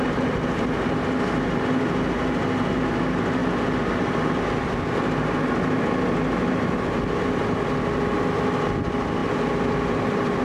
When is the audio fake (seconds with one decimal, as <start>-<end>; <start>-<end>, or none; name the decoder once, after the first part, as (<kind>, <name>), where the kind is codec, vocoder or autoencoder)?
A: 9.2-10.4 (vocoder, BigVGAN v2)